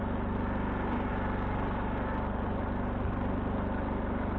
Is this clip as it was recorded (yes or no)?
yes